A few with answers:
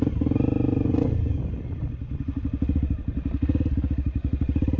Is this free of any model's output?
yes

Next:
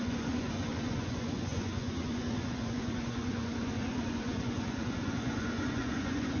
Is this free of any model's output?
no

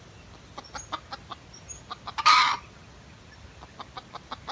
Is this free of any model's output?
yes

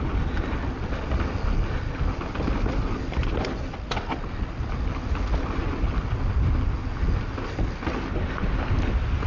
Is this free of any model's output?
yes